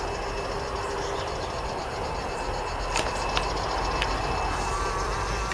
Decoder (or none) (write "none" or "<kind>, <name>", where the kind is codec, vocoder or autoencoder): none